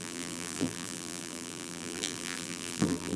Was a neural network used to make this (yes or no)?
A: yes